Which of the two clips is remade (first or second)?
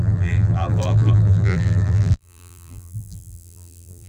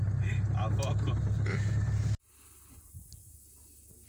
first